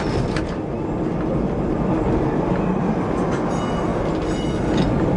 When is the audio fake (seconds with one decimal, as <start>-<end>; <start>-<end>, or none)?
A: none